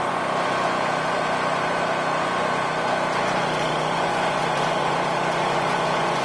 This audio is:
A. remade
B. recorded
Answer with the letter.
A